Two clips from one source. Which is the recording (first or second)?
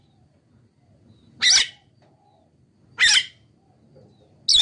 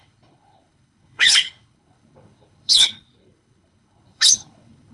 first